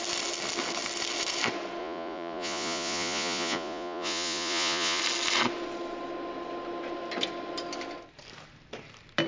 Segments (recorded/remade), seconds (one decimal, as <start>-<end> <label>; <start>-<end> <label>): 0.0-1.8 recorded; 1.8-5.0 remade; 5.0-9.3 recorded